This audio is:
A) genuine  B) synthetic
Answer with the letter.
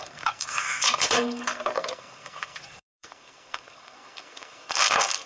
B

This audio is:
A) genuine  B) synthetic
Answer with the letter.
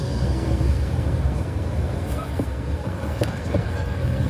B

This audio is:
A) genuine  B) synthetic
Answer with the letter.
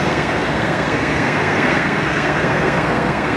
B